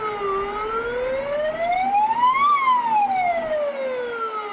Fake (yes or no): no